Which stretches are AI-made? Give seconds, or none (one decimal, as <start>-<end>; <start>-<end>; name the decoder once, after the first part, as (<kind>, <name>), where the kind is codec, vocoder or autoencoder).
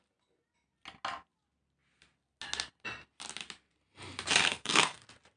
4.4-5.0 (codec, SNAC)